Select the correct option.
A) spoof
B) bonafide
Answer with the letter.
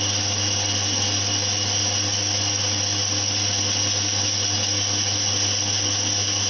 B